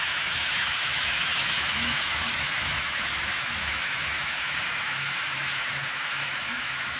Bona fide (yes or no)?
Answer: no